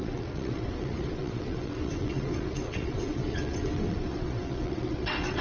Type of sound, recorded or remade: remade